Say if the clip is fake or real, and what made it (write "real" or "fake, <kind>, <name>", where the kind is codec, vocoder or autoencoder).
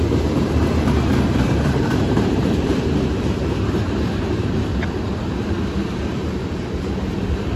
fake, vocoder, BigVGAN v2